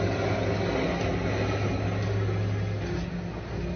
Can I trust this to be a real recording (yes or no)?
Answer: yes